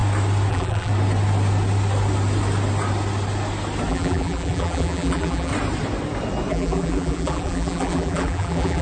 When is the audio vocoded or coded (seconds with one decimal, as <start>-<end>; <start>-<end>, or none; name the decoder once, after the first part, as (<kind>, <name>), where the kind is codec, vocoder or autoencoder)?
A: 0.5-0.9 (vocoder, BigVGAN v2); 3.9-5.5; 6.5-8.8